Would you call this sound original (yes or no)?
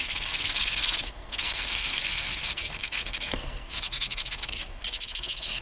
no